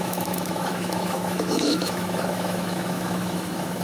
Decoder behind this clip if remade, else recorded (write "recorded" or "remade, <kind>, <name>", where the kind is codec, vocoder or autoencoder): remade, autoencoder, DAC-VAE